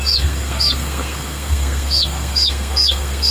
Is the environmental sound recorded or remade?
remade